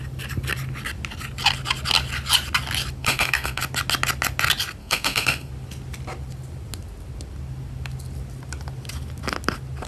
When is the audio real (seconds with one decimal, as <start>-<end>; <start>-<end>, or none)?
0.0-3.0; 3.6-4.8; 5.5-9.9